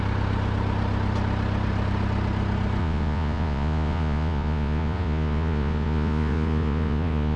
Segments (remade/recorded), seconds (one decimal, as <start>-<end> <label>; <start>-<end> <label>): 0.0-2.8 recorded; 2.8-7.4 remade